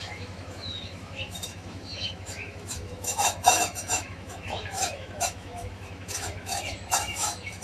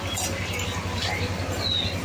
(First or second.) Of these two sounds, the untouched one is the second